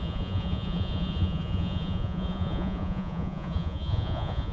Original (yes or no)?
no